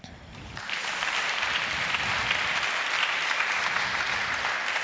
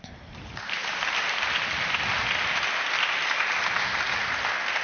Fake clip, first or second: first